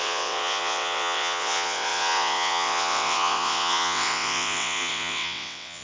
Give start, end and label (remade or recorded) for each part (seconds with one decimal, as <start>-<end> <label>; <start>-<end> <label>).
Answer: 0.0-5.8 remade